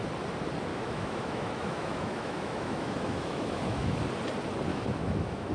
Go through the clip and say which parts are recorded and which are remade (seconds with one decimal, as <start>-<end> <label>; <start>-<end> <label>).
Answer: 0.0-0.7 recorded; 0.7-4.0 remade; 4.0-4.7 recorded; 4.7-5.5 remade